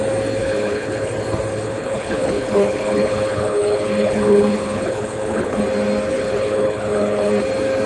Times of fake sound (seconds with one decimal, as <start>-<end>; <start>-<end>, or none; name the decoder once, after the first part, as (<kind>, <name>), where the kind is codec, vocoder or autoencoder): 0.4-1.1 (codec, HILCodec); 1.5-5.6; 6.1-7.3